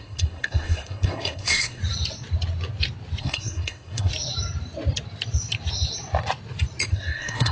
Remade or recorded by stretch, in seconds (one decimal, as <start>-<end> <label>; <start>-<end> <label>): 0.0-1.8 remade; 1.8-3.2 recorded; 3.2-4.1 remade; 4.1-6.9 recorded; 6.9-7.5 remade